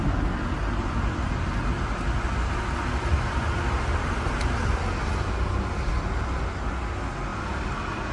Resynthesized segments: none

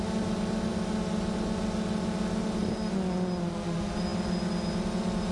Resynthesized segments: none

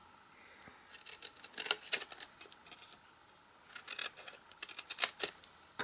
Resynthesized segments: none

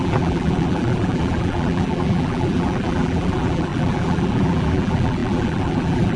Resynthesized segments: 0.0-6.2 (vocoder, BigVGAN v2)

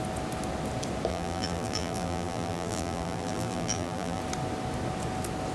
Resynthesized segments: 1.1-4.2 (vocoder, BigVGAN v2)

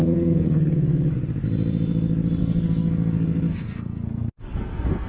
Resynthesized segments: 0.0-1.2 (codec, SNAC); 2.4-5.1

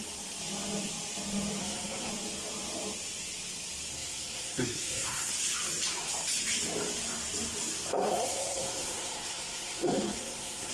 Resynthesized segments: 1.6-2.1 (codec, SNAC); 3.9-5.3; 7.9-10.7